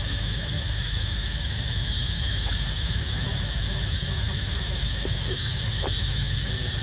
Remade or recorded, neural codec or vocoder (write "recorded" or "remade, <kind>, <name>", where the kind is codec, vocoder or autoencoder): remade, autoencoder, DAC-VAE